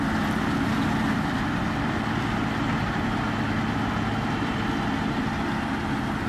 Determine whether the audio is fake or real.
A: real